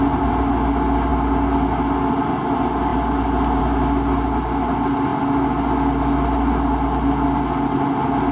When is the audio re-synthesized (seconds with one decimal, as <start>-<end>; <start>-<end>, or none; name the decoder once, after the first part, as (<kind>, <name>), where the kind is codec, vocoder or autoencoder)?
none